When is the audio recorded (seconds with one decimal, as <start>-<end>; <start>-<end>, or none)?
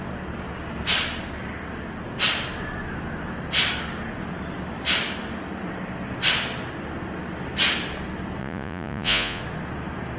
0.0-8.4; 9.4-10.2